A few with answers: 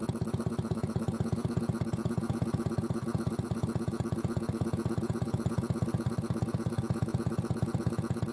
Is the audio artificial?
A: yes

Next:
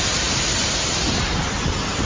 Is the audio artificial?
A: yes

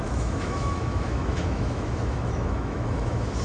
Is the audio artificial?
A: yes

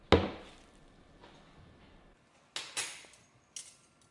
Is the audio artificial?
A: no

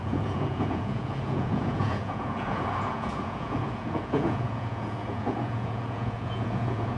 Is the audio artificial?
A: yes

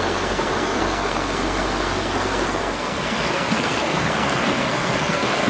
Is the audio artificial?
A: yes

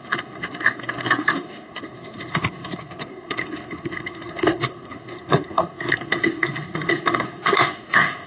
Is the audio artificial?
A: yes